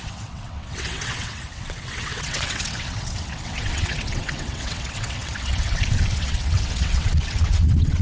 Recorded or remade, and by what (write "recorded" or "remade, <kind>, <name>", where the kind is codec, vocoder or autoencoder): remade, vocoder, WaveNeXt